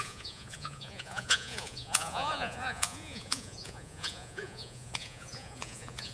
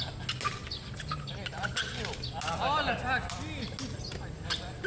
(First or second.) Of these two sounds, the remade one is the first